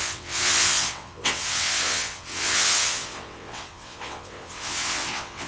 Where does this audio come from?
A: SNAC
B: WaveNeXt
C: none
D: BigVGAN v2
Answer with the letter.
B